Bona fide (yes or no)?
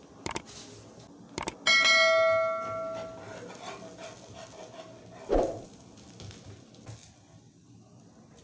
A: yes